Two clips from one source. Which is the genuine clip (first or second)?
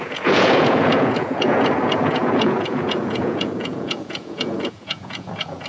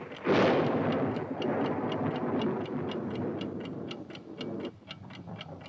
second